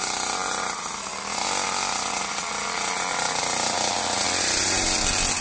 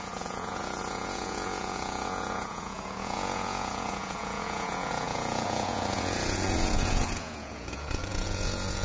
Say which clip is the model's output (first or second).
second